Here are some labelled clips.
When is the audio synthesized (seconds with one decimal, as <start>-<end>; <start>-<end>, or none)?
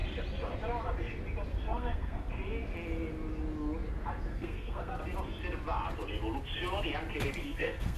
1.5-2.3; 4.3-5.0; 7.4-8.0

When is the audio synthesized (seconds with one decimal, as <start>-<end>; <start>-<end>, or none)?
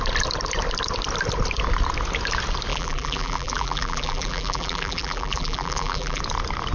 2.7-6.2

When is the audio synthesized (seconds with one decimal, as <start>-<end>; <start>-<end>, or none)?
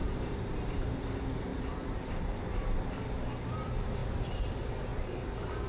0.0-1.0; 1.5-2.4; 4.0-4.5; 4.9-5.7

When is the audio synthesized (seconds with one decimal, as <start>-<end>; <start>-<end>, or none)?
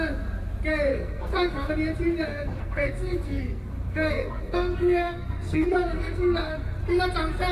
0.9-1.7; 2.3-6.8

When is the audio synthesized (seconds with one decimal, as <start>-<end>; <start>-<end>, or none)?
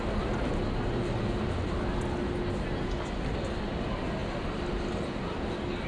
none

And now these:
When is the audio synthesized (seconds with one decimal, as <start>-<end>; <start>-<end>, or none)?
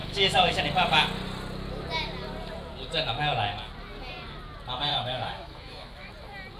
0.0-0.6; 4.9-6.1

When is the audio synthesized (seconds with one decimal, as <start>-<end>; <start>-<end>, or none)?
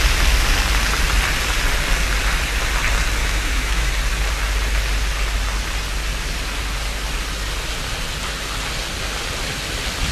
3.2-3.9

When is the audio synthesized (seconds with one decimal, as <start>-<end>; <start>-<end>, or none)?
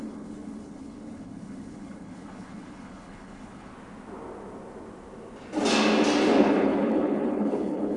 0.0-3.7; 6.4-8.0